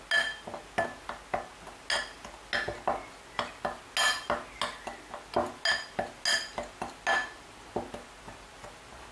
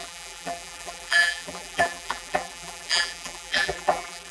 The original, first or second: first